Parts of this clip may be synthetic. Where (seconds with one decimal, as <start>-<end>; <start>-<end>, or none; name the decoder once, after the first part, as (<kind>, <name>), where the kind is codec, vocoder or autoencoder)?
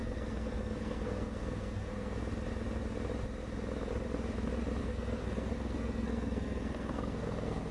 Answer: 0.0-2.2 (codec, SNAC); 4.8-7.7